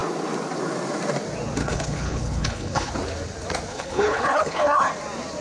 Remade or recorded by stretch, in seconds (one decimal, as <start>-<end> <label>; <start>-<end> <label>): 0.0-1.6 recorded; 1.6-2.9 remade; 2.9-3.7 recorded; 3.7-4.9 remade; 4.9-5.4 recorded